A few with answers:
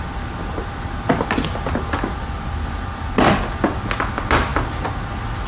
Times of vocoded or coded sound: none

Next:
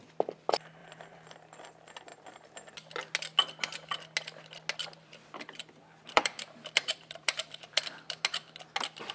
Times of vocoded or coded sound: 0.8-1.3 (vocoder, BigVGAN v2); 4.8-7.8